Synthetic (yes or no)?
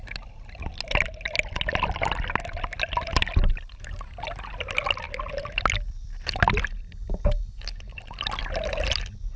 no